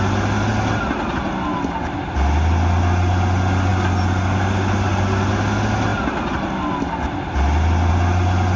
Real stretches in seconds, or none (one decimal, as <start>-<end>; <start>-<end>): 0.0-8.6